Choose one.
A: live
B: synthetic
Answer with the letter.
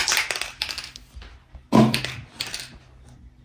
A